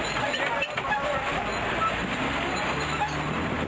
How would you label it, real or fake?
real